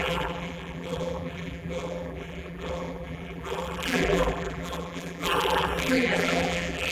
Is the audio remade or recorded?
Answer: remade